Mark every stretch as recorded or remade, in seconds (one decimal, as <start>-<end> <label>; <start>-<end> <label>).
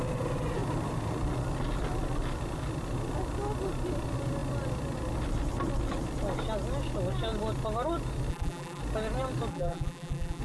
0.0-8.3 recorded; 8.3-8.8 remade; 8.8-9.5 recorded; 9.5-10.4 remade